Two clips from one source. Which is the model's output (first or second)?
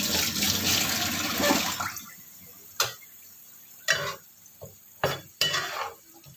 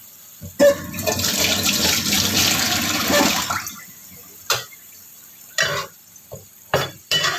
second